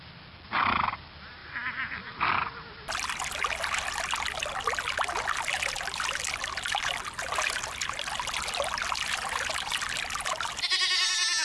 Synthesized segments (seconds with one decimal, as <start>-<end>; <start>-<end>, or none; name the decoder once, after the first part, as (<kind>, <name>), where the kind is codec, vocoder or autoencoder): none